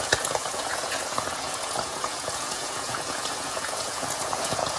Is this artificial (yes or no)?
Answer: yes